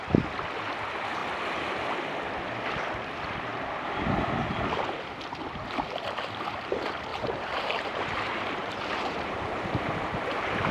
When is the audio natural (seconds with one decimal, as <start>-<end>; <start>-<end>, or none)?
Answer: 0.0-7.1; 8.0-8.6